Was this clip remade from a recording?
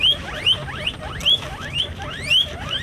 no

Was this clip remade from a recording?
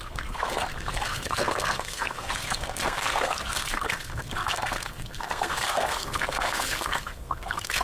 yes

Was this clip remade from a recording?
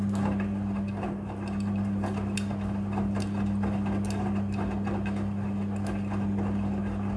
no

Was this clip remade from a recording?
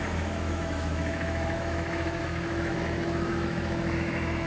yes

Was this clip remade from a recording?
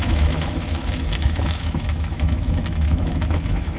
yes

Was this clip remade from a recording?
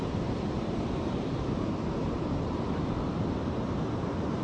yes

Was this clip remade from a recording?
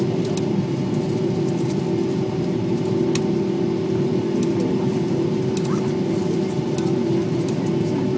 no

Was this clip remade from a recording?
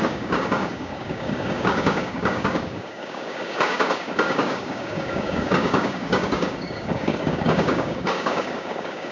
yes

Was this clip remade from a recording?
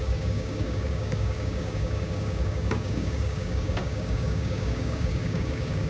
yes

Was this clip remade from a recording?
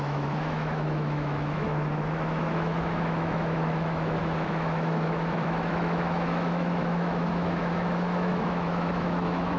yes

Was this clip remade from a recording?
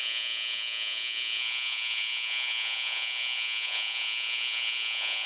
yes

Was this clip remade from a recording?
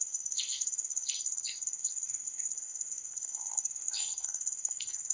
yes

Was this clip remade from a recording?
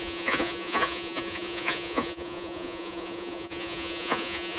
yes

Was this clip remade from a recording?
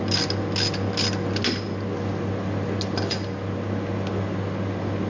no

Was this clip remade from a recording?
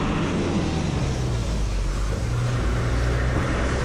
no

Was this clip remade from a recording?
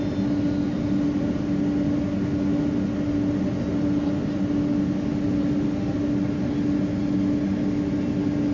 no